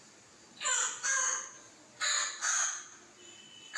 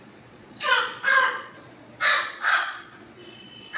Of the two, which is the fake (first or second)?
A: second